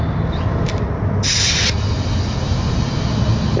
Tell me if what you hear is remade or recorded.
recorded